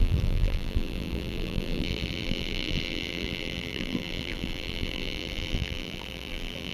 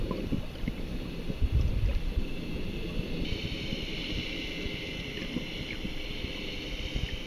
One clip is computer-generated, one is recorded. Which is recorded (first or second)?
second